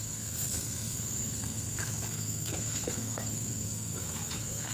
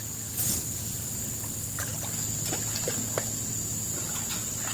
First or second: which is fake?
first